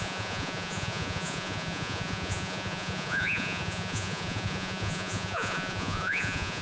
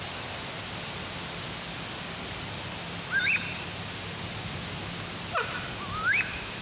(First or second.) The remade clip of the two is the first